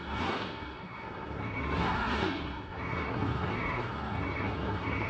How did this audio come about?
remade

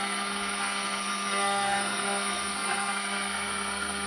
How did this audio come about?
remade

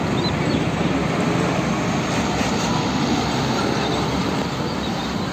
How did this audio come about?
recorded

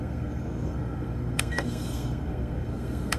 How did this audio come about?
remade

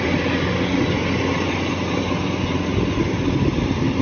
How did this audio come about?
recorded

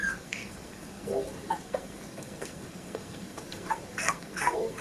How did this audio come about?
remade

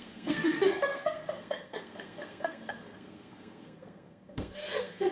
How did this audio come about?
remade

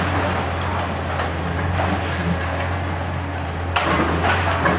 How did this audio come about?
recorded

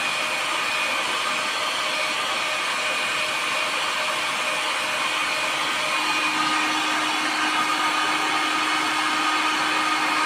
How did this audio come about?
recorded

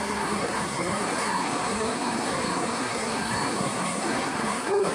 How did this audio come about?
remade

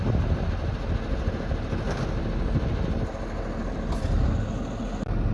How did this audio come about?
recorded